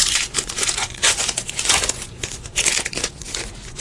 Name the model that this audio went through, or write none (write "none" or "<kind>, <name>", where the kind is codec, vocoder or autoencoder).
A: vocoder, Vocos